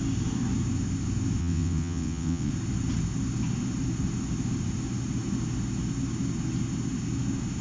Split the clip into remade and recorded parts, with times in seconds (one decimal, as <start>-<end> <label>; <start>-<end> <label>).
0.0-1.4 recorded; 1.4-2.5 remade; 2.5-7.6 recorded